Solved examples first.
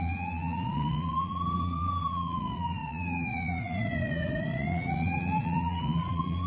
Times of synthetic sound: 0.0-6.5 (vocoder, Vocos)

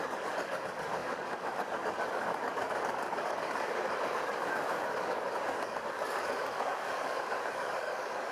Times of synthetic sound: 0.0-8.3 (codec, DAC)